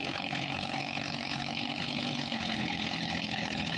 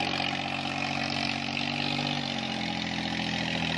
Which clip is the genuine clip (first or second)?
second